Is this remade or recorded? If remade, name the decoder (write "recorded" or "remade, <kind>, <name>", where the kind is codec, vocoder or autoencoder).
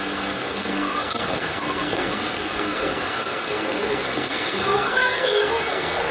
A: remade, codec, SNAC